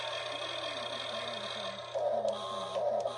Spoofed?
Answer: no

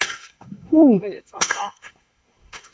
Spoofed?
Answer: yes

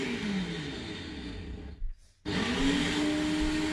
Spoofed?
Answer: no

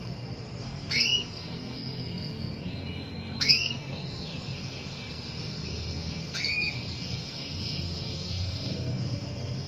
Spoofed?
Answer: yes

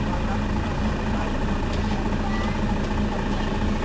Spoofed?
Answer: no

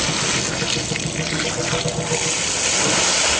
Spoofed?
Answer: no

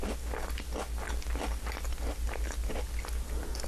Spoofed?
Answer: no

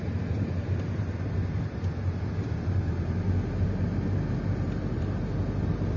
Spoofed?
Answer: no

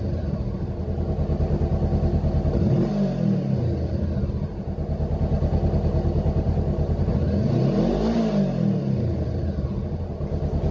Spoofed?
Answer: no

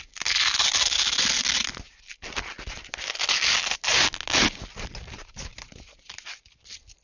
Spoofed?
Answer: no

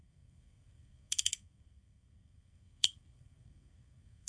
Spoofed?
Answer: yes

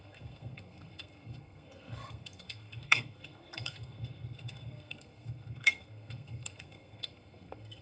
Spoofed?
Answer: yes